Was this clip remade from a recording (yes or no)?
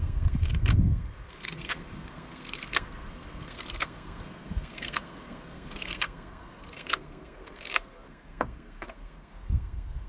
yes